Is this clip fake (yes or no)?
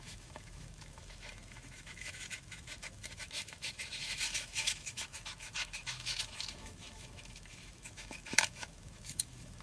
yes